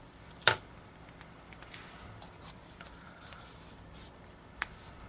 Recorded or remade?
remade